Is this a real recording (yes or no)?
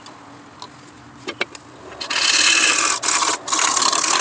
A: yes